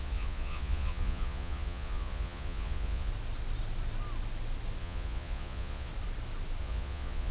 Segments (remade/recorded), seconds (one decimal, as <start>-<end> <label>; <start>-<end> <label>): 0.0-3.1 remade; 3.1-4.8 recorded; 4.8-5.9 remade; 5.9-6.6 recorded; 6.6-7.3 remade